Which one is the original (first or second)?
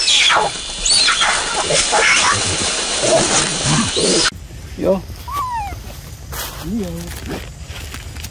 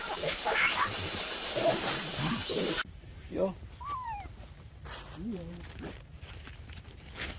first